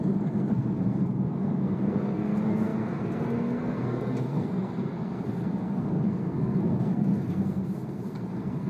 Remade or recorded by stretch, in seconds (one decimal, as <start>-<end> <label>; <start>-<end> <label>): 0.0-8.7 remade